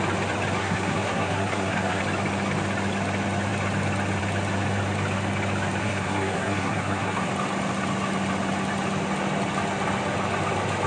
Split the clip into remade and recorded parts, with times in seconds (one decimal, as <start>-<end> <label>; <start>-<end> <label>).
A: 0.0-0.6 recorded; 0.6-2.0 remade; 2.0-5.8 recorded; 5.8-7.3 remade; 7.3-10.9 recorded